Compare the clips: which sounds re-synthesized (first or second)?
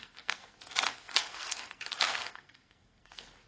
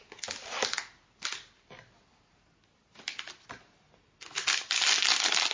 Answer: first